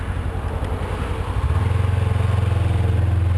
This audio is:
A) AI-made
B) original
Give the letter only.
B